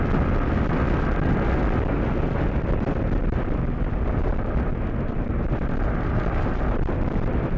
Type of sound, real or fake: real